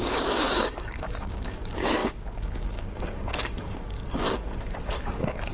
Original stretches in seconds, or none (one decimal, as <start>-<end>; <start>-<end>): none